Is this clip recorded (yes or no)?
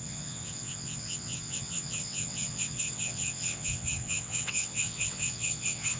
no